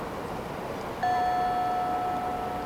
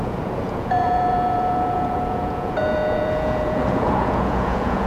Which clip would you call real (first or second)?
first